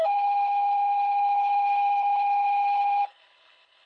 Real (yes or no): no